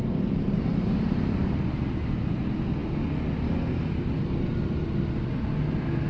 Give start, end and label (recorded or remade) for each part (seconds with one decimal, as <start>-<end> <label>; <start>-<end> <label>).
0.0-6.1 recorded